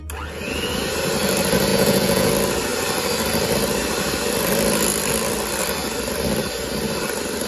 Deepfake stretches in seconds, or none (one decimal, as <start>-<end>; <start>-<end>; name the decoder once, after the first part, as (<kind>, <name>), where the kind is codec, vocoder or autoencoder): 1.7-2.3 (vocoder, Vocos)